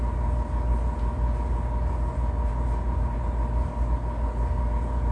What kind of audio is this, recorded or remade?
recorded